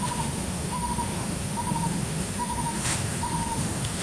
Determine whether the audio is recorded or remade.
remade